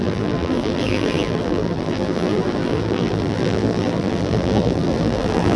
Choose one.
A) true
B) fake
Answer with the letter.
B